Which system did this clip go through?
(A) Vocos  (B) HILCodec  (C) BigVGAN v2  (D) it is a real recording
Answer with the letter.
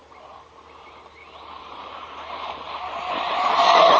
D